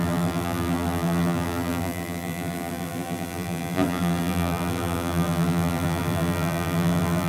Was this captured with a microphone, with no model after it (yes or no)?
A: no